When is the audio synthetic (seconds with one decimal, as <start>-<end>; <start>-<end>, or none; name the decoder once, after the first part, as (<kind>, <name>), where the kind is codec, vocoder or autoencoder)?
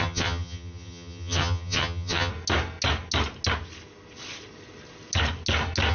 0.0-2.3 (vocoder, HiFi-GAN)